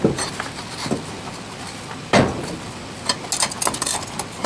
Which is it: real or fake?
real